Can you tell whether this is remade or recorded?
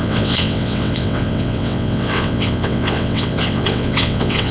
remade